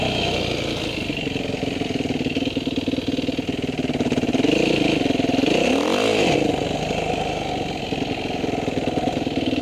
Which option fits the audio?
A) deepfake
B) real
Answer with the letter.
B